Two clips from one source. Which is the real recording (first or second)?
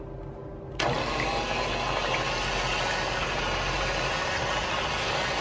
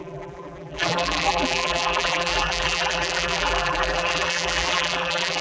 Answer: first